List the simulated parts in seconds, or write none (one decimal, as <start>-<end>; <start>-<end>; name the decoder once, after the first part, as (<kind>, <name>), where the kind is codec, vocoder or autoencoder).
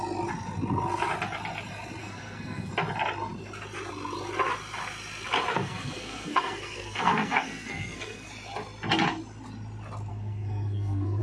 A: 2.0-2.7 (codec, SNAC); 5.5-8.3; 10.1-11.2